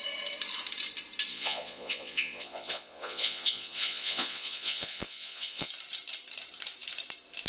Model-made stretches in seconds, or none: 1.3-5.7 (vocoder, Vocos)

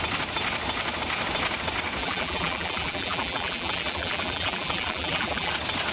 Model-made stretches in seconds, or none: 2.0-5.5 (vocoder, BigVGAN v2)

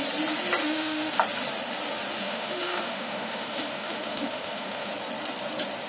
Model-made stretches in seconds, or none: 0.6-1.1 (autoencoder, DAC-VAE); 2.2-4.9

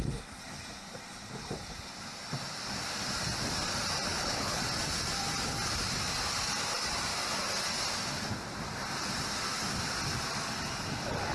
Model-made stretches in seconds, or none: 4.1-4.6 (codec, HILCodec)

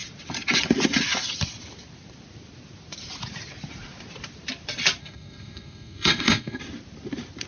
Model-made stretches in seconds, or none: 5.0-6.6 (codec, SNAC)

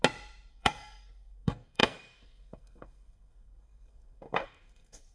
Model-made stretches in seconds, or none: 0.5-5.1 (codec, SNAC)